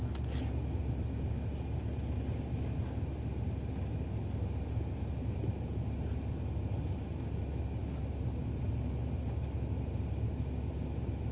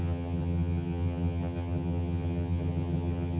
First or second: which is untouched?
first